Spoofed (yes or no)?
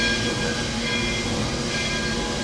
no